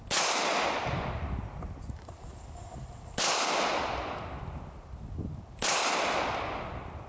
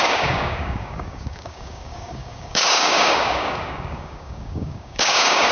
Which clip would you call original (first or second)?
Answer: first